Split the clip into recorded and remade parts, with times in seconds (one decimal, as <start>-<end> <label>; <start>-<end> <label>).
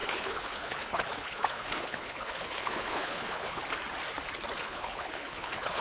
0.0-3.6 remade; 3.6-4.6 recorded; 4.6-5.8 remade